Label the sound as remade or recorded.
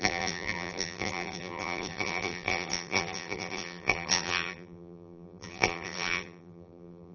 remade